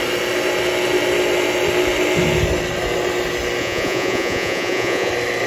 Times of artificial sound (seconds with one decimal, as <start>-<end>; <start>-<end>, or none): 3.6-5.1